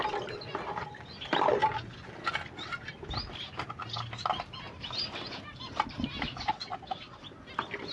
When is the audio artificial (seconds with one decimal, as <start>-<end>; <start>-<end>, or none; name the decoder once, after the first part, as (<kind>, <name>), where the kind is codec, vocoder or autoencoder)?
6.5-7.2 (vocoder, WaveNeXt)